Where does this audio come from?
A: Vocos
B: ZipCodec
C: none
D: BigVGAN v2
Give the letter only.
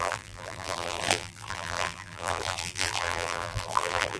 D